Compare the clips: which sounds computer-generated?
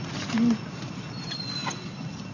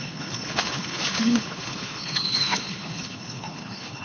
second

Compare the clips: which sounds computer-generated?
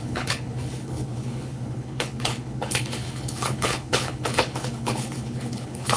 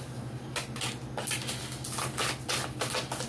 first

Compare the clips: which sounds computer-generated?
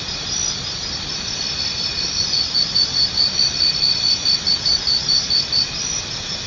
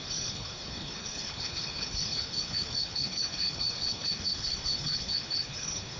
second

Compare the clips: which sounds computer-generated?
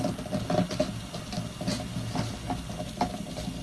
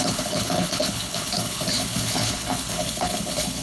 second